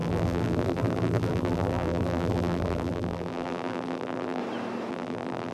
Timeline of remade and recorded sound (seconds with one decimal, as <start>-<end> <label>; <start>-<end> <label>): 0.0-4.4 remade; 4.4-4.9 recorded; 4.9-5.5 remade